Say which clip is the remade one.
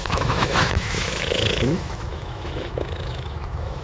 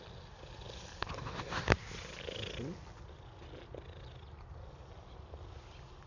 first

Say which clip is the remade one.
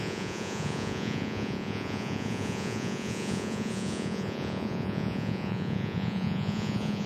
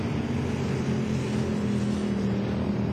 first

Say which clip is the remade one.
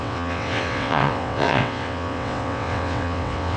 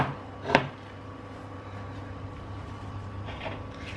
first